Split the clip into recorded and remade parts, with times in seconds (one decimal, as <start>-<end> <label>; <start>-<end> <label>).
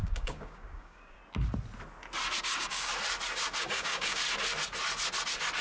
0.0-1.2 remade; 1.2-2.4 recorded; 2.4-2.9 remade; 2.9-3.6 recorded; 3.6-4.2 remade; 4.2-5.6 recorded